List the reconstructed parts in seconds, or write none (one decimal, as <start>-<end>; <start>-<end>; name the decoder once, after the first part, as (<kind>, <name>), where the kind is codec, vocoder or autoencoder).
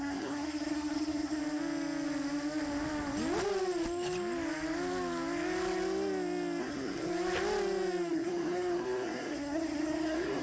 0.0-1.4 (codec, SNAC); 6.6-7.1; 8.1-10.4